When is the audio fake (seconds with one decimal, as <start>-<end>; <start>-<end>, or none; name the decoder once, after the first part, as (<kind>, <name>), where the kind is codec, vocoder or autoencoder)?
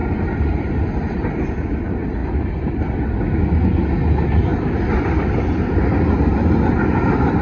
0.0-0.8 (vocoder, BigVGAN v2); 2.2-2.9; 4.5-7.4